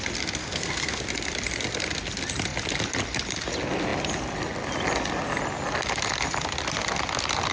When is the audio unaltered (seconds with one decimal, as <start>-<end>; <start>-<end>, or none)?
0.0-0.4; 1.0-7.5